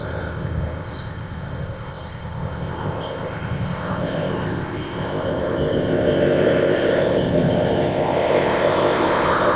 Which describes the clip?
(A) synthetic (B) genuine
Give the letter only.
A